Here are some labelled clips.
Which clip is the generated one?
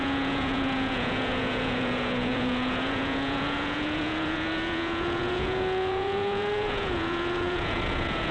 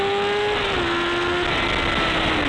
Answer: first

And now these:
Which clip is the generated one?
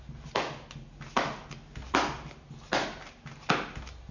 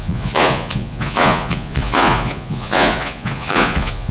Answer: second